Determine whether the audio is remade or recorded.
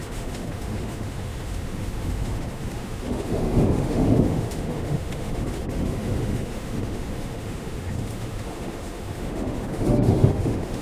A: remade